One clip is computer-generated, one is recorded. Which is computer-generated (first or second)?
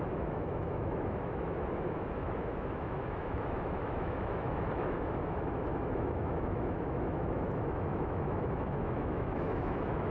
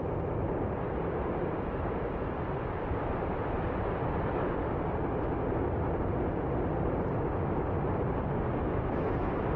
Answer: first